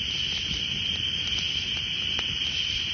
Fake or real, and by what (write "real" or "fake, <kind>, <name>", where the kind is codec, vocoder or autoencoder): real